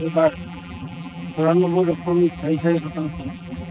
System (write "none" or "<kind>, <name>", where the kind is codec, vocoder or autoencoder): vocoder, BigVGAN v2